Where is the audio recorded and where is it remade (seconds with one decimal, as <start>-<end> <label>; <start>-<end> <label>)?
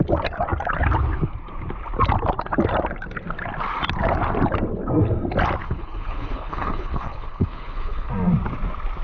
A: 0.0-5.6 recorded; 5.6-8.1 remade; 8.1-9.0 recorded